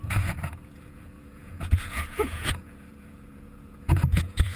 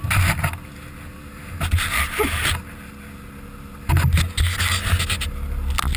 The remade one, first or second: first